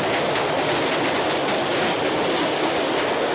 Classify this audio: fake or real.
real